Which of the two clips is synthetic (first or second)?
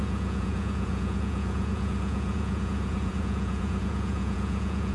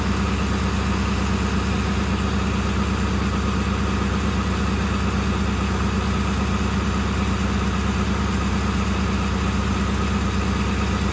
first